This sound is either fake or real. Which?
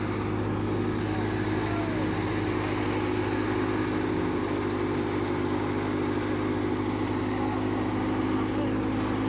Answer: real